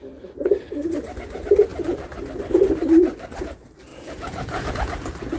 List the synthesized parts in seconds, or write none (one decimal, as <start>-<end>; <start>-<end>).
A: 3.9-4.7